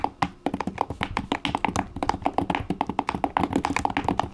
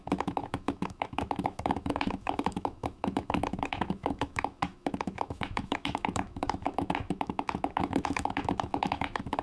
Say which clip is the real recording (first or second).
first